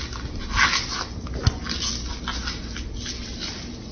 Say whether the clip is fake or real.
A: real